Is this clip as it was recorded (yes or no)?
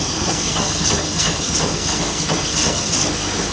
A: no